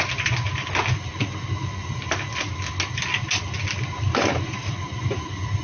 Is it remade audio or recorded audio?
recorded